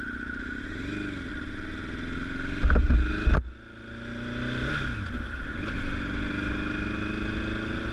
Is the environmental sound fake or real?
real